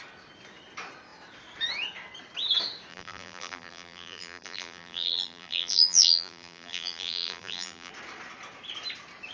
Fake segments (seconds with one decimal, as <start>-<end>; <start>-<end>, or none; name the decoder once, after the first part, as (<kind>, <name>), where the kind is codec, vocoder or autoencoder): 2.9-7.9 (vocoder, BigVGAN v2)